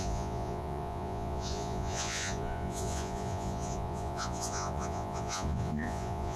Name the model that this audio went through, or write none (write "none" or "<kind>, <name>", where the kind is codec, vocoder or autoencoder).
vocoder, Vocos